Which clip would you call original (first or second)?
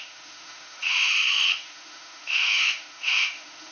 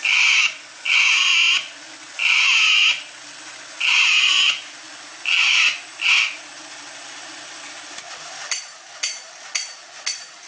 second